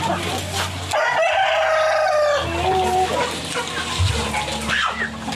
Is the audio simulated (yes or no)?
no